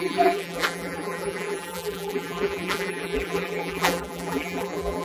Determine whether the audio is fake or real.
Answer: fake